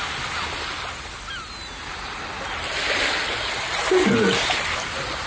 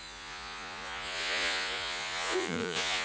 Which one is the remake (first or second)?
second